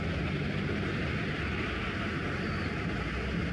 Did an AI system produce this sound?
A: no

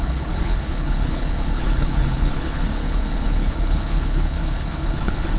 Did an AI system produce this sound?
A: yes